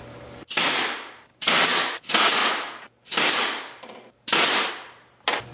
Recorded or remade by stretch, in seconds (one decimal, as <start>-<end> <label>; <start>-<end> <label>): 0.0-1.3 recorded; 1.3-2.0 remade; 2.0-2.4 recorded; 2.4-4.7 remade; 4.7-5.5 recorded